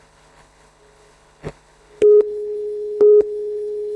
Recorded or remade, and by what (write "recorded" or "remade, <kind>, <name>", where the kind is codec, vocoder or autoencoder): remade, codec, HILCodec